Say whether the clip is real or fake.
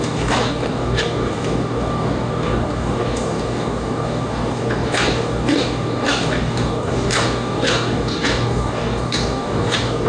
fake